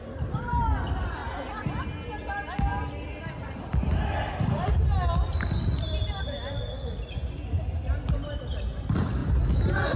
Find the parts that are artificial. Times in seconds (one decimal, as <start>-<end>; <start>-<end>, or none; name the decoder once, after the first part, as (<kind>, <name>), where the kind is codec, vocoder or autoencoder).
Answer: none